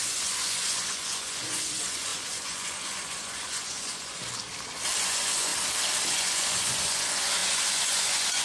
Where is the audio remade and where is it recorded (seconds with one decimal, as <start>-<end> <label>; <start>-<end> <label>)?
0.0-4.2 remade; 4.2-5.0 recorded; 5.0-5.5 remade; 5.5-6.1 recorded; 6.1-8.4 remade